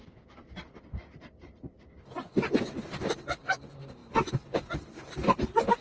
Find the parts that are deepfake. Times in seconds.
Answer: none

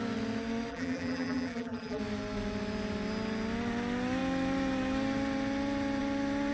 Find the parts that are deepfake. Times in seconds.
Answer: 0.7-2.0 (vocoder, BigVGAN v2)

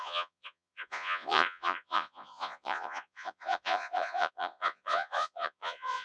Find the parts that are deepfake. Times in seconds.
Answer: 0.0-6.0 (vocoder, Vocos)